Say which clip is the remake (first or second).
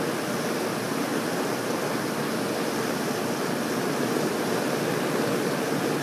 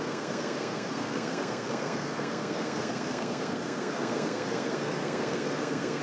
second